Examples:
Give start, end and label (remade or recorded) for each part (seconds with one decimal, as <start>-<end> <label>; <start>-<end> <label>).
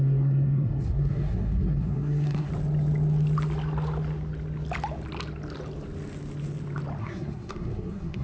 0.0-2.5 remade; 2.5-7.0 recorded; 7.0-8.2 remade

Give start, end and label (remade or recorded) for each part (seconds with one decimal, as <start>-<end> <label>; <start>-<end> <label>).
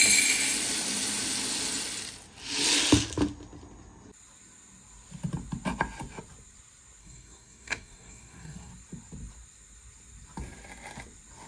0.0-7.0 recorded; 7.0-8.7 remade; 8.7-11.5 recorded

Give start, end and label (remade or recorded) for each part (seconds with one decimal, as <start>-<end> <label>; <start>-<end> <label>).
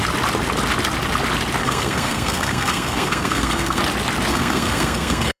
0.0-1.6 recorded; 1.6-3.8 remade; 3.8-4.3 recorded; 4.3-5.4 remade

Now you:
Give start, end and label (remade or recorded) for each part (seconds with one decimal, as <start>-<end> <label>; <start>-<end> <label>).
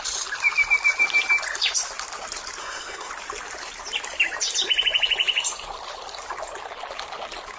0.0-2.6 recorded; 2.6-3.1 remade; 3.1-7.6 recorded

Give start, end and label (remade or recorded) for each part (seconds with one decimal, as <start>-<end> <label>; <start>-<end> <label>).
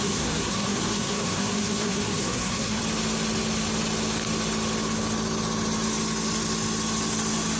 0.0-2.8 remade; 2.8-7.6 recorded